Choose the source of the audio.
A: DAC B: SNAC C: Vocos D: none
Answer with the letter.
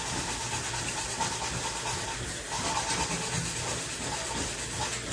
D